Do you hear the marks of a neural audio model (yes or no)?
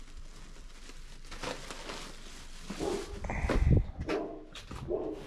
no